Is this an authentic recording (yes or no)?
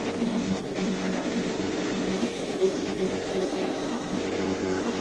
no